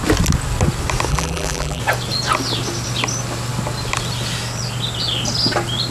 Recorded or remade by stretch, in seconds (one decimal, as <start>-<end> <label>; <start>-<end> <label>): 0.0-1.1 recorded; 1.1-1.8 remade; 1.8-5.9 recorded